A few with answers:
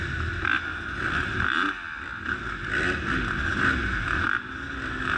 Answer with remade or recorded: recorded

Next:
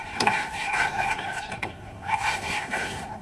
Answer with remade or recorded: remade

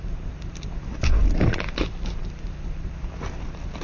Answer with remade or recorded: recorded